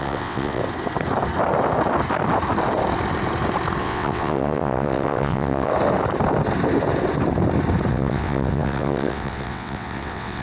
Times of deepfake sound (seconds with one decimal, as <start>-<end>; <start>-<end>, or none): 0.0-0.6; 3.8-5.7; 7.9-10.4